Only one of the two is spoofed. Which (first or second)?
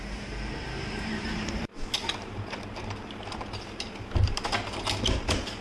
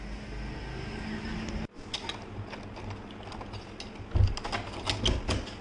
first